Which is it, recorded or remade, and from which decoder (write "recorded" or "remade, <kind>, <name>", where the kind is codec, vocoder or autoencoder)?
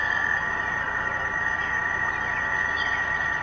remade, vocoder, BigVGAN v2